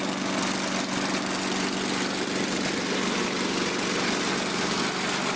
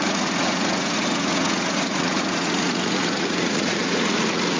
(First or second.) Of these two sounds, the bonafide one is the first